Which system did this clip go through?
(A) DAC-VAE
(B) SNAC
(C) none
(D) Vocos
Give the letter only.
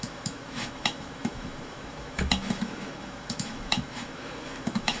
A